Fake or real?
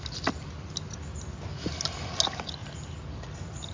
real